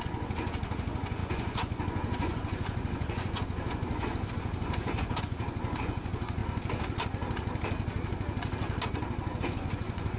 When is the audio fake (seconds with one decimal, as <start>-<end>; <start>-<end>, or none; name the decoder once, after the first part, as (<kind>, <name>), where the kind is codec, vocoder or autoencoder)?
0.0-6.4 (vocoder, Vocos); 9.4-10.2